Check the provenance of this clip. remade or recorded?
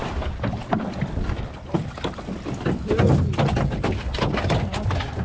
recorded